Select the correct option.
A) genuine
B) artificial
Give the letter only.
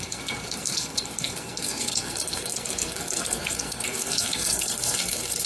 B